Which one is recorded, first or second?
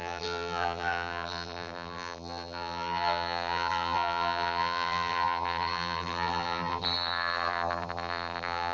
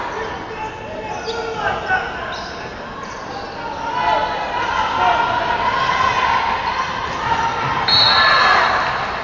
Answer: second